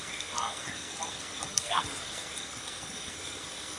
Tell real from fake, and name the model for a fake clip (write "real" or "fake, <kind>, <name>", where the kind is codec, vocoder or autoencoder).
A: fake, codec, SNAC